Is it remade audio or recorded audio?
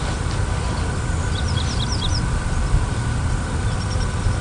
recorded